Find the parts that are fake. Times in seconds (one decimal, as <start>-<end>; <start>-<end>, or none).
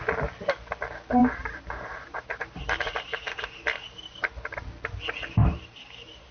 1.2-4.5; 5.4-6.3